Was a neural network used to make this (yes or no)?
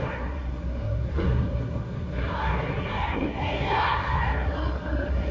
yes